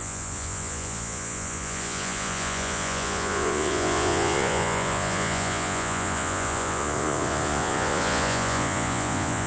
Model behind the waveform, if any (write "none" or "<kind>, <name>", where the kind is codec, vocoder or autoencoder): vocoder, Vocos